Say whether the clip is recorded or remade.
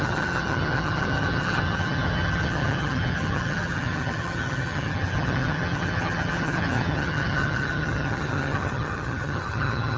remade